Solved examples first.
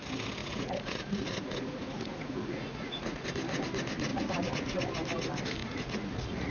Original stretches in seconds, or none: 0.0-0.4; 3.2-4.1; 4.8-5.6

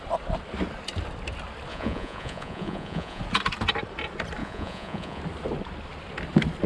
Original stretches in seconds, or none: 0.0-1.7; 3.2-4.4; 5.2-6.7